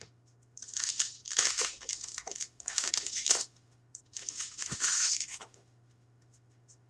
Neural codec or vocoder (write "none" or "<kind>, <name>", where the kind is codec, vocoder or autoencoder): autoencoder, DAC-VAE